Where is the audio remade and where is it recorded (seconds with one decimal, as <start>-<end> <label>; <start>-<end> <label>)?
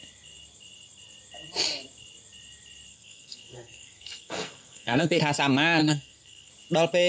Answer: 0.0-2.9 recorded; 2.9-5.2 remade; 5.2-5.8 recorded; 5.8-6.5 remade; 6.5-7.1 recorded